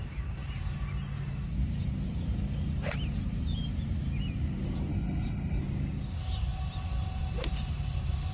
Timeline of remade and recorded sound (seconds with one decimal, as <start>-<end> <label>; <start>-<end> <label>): 0.0-4.9 recorded; 4.9-5.6 remade; 5.6-8.3 recorded